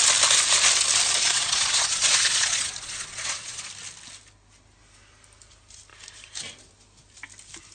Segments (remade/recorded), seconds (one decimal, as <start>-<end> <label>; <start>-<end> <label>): 0.0-1.2 recorded; 1.2-3.7 remade; 3.7-7.7 recorded